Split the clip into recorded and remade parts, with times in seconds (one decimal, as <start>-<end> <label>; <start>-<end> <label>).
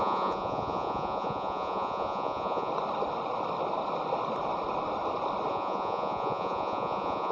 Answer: 0.0-2.7 remade; 2.7-5.5 recorded; 5.5-7.3 remade